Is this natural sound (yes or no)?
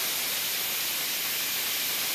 yes